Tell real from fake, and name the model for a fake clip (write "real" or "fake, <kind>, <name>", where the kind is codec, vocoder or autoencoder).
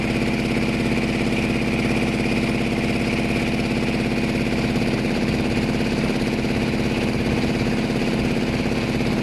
real